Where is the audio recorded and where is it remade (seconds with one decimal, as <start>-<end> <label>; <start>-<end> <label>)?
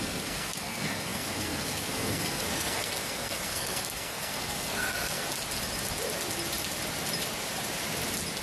0.0-5.2 remade; 5.2-8.4 recorded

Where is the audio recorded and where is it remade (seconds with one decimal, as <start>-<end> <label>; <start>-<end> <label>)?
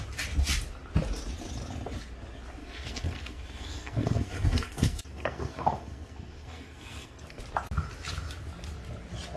0.0-2.6 recorded; 2.6-7.4 remade; 7.4-9.4 recorded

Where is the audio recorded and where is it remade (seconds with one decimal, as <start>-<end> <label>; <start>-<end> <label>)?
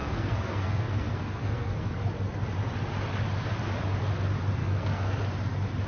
0.0-1.9 remade; 1.9-4.6 recorded; 4.6-5.2 remade; 5.2-5.9 recorded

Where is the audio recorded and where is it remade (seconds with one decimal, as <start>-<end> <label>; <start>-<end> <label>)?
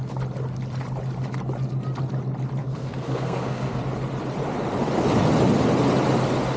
0.0-2.6 recorded; 2.6-3.8 remade; 3.8-6.6 recorded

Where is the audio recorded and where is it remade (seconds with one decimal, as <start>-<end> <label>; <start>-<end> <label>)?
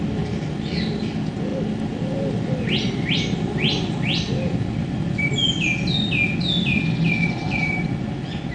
0.0-8.5 recorded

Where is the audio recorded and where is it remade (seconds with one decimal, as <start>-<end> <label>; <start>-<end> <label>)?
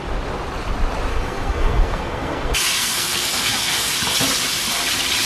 0.0-1.1 recorded; 1.1-3.9 remade; 3.9-5.3 recorded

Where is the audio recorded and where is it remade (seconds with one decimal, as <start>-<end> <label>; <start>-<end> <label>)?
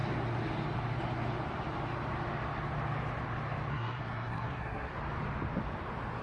0.0-3.7 recorded; 3.7-4.9 remade; 4.9-6.2 recorded